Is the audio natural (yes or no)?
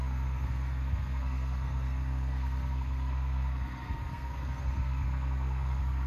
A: no